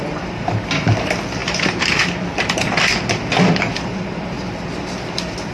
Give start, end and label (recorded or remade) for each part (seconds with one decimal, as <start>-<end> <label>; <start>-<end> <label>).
0.0-5.5 recorded